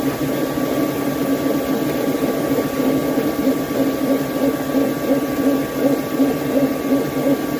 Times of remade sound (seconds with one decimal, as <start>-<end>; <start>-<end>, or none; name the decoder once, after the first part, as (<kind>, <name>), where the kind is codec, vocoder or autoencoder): none